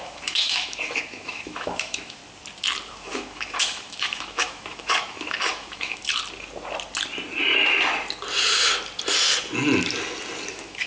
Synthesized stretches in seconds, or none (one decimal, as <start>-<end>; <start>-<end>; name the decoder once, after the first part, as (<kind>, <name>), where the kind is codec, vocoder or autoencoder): 0.0-2.2 (autoencoder, DAC-VAE); 2.9-6.0; 10.5-10.9